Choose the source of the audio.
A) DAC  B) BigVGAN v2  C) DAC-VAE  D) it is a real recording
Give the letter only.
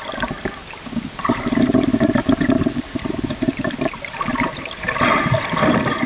B